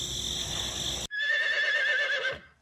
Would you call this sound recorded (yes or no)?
yes